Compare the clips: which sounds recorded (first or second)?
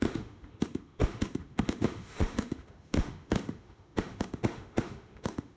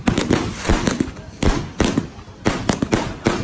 second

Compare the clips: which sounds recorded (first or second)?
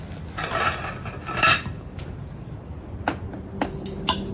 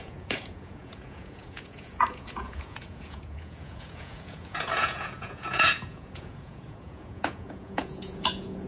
first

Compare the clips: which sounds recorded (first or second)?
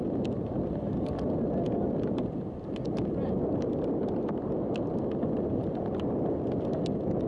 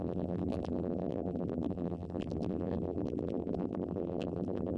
first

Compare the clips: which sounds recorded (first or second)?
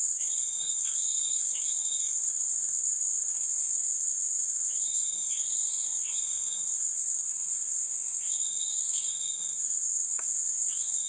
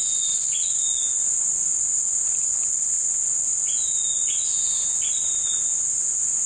second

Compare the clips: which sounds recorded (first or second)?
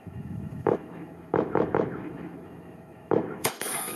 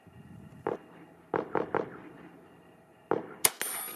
second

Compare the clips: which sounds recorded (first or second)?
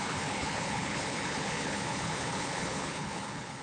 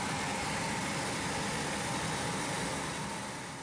second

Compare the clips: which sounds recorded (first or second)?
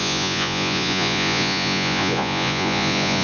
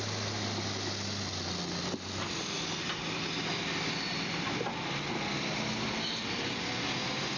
second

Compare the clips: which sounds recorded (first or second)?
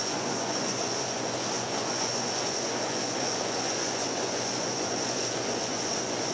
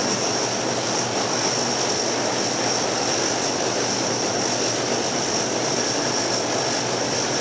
second